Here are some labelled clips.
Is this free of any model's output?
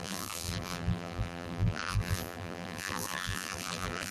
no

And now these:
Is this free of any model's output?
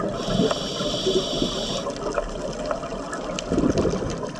yes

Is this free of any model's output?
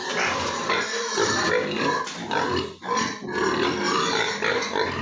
yes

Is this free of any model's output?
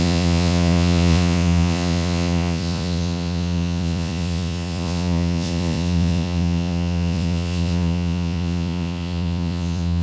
no